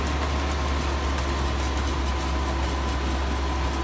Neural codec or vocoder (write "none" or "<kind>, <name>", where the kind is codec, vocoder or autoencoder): none